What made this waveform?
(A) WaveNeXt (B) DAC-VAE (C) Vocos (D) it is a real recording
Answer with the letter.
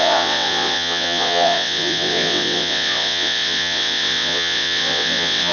A